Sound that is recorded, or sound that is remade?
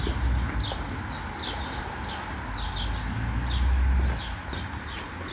recorded